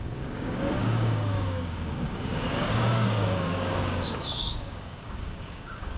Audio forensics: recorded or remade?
remade